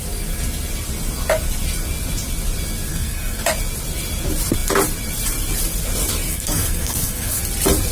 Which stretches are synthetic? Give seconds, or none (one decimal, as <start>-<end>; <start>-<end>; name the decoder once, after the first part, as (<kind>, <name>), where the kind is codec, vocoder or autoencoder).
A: 2.9-3.4 (codec, SNAC); 6.3-7.4